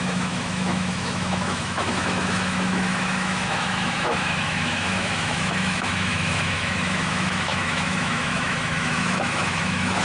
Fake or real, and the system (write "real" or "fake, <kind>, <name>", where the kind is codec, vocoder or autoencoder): fake, autoencoder, DAC-VAE